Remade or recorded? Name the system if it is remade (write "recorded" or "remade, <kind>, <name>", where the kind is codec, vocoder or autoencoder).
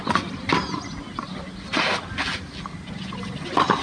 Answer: recorded